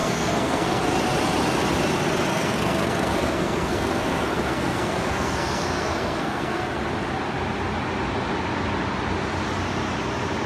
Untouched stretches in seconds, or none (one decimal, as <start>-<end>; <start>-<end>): 0.8-2.3; 6.8-10.5